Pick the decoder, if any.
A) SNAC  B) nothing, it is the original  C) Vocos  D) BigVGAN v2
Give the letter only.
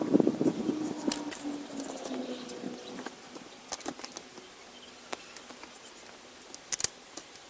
B